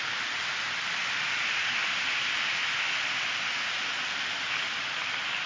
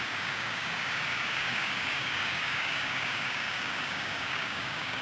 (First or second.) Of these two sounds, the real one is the first